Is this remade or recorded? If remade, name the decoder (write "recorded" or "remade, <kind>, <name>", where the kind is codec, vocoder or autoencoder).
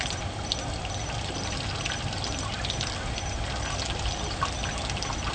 recorded